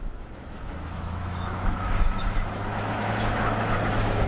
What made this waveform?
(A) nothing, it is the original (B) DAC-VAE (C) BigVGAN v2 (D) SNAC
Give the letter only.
B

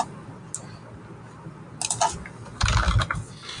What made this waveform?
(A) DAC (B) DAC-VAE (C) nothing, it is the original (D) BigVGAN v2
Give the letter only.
C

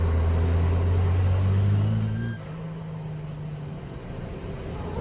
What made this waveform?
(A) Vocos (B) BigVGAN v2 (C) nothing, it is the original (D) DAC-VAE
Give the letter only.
C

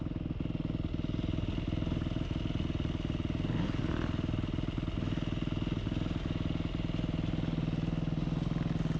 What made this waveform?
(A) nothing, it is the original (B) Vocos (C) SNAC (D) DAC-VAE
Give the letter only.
A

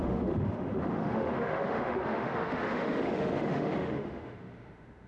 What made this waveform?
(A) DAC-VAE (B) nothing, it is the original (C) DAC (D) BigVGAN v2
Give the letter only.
A